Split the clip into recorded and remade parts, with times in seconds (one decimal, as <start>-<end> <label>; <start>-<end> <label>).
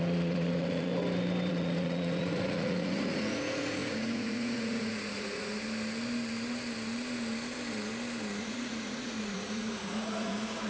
0.0-0.9 remade; 0.9-1.5 recorded; 1.5-5.5 remade; 5.5-8.4 recorded; 8.4-10.7 remade